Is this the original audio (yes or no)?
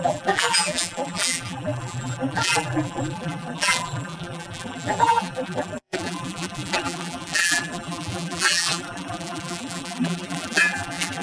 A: no